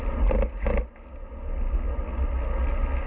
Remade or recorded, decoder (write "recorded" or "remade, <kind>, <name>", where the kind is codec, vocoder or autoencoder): recorded